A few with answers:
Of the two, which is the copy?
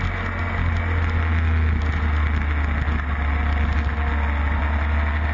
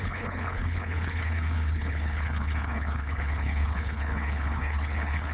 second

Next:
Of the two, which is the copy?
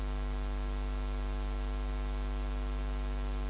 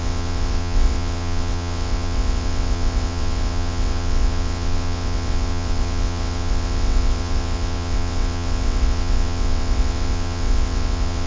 second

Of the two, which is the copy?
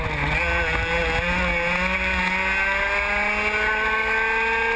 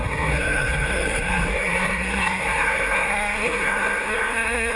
second